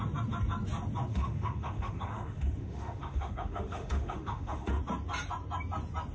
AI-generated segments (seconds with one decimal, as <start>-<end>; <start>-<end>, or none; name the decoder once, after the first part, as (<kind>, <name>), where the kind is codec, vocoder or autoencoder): 1.1-4.8 (autoencoder, DAC-VAE)